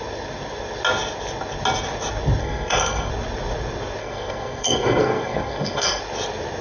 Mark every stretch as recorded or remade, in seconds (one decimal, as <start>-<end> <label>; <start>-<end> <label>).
0.0-2.4 recorded; 2.4-3.1 remade; 3.1-4.0 recorded; 4.0-6.0 remade; 6.0-6.6 recorded